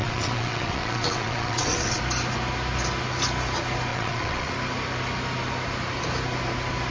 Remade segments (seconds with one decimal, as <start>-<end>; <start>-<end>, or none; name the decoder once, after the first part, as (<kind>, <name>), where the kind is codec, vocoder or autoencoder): 0.0-2.0 (vocoder, WaveNeXt); 3.9-4.5